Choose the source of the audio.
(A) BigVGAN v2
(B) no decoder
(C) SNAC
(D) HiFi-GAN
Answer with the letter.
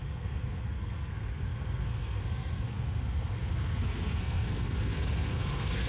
C